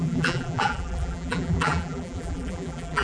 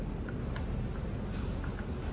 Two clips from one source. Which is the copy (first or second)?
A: first